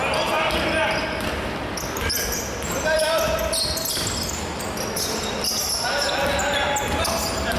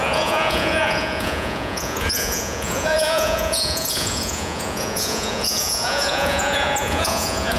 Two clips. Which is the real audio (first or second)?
first